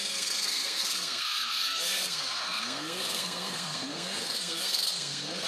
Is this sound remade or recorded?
remade